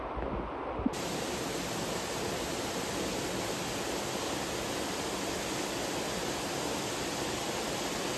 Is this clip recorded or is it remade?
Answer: recorded